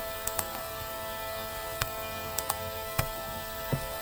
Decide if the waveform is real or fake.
fake